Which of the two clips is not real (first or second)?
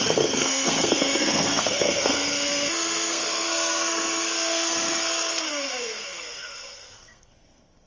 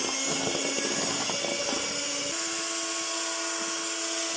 first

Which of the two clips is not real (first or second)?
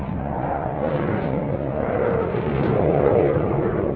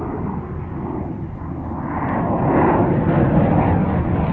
first